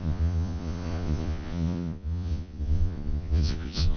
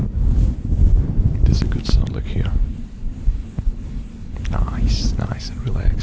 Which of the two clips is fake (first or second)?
first